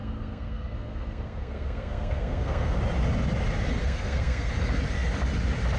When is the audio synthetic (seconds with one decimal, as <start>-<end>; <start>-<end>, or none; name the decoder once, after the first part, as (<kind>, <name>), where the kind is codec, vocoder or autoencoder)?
0.0-2.8 (codec, SNAC); 3.8-4.5

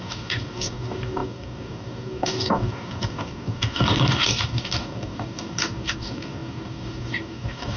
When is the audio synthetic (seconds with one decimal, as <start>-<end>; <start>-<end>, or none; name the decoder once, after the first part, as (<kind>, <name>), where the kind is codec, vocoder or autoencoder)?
0.0-7.8 (codec, DAC)

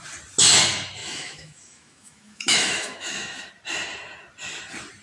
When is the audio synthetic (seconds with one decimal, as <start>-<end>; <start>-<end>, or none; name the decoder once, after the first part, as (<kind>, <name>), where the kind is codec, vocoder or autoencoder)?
1.0-3.5 (autoencoder, DAC-VAE)

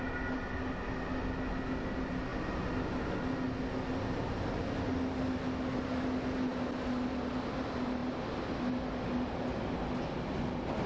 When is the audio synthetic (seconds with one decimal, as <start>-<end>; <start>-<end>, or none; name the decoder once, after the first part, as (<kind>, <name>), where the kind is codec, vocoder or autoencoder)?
none

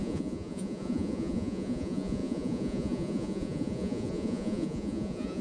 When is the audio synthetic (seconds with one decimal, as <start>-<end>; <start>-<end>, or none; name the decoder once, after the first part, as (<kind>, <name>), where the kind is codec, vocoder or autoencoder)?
0.0-5.4 (vocoder, Vocos)

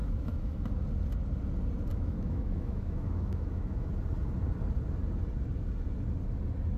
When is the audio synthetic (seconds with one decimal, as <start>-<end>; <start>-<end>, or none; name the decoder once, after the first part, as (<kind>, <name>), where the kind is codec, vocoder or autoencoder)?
0.0-0.7 (autoencoder, DAC-VAE); 1.9-3.9